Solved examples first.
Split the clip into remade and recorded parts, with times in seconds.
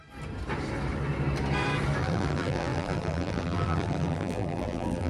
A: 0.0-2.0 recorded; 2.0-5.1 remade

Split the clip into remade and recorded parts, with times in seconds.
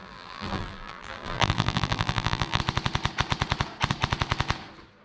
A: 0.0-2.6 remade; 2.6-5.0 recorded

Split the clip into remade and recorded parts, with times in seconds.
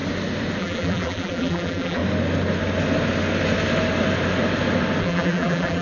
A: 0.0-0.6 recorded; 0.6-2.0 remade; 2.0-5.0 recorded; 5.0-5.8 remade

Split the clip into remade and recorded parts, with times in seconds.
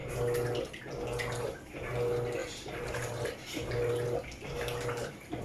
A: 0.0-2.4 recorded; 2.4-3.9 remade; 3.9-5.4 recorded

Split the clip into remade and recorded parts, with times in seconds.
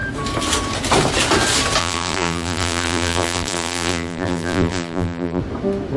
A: 0.0-1.8 recorded; 1.8-5.4 remade; 5.4-6.0 recorded